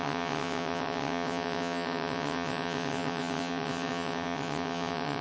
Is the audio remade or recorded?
remade